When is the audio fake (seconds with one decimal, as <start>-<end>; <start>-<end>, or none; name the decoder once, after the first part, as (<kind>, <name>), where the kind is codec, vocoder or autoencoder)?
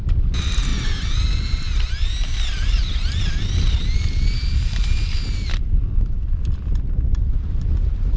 none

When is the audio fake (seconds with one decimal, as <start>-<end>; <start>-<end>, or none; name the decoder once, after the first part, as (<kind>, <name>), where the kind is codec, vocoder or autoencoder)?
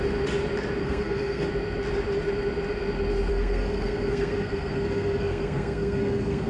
0.8-1.5 (codec, SNAC); 3.3-6.5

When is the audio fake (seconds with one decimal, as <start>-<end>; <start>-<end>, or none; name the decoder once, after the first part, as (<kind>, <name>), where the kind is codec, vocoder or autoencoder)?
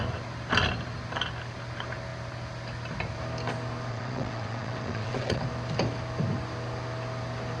3.9-5.4 (vocoder, WaveNeXt)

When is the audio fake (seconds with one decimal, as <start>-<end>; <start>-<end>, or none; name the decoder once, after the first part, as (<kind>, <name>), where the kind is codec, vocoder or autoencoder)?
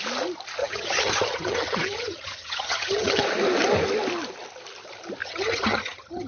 0.6-3.2 (vocoder, HiFi-GAN); 5.2-6.3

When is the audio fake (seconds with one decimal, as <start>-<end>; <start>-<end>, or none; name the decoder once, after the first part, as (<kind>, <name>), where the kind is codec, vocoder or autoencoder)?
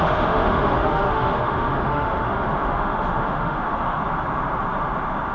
0.0-4.0 (autoencoder, DAC-VAE)